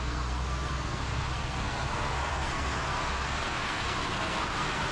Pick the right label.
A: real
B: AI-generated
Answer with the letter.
B